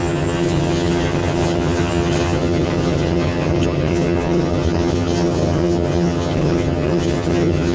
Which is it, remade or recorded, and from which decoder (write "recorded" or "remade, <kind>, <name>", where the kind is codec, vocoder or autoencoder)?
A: remade, vocoder, HiFi-GAN